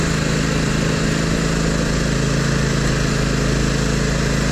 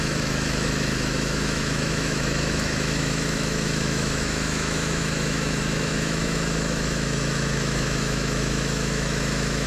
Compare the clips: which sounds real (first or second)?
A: first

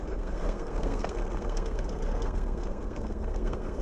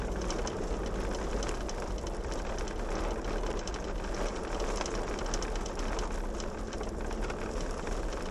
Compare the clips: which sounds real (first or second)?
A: second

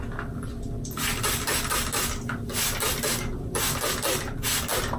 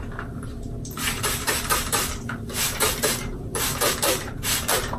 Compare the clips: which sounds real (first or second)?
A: first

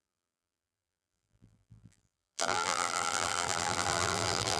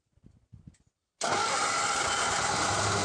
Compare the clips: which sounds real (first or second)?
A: second